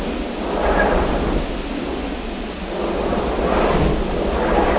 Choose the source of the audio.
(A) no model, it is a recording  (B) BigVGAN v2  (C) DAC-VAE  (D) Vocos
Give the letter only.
A